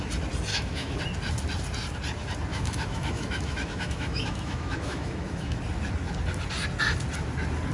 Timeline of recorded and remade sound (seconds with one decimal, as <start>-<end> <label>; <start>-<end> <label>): 0.0-0.5 recorded; 0.5-1.0 remade; 1.0-2.5 recorded; 2.5-5.6 remade; 5.6-7.7 recorded